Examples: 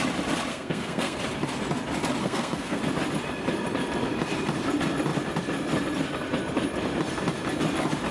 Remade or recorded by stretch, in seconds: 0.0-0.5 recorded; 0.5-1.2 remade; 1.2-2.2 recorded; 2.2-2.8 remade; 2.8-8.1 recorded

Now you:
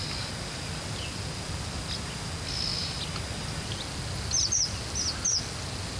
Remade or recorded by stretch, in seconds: 0.0-6.0 recorded